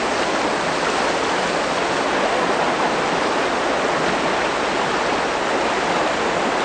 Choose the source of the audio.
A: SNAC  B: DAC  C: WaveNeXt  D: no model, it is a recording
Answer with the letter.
D